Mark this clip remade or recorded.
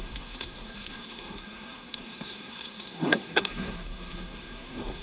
remade